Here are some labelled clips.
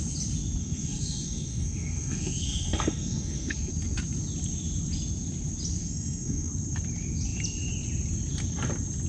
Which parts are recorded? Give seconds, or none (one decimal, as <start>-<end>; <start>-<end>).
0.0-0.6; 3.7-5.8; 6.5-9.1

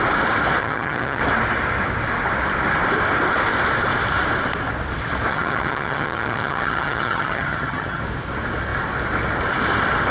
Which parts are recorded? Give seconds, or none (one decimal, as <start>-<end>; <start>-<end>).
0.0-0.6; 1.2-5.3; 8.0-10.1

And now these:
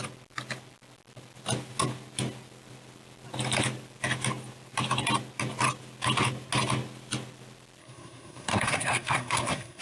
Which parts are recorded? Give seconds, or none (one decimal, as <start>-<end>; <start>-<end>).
0.0-7.8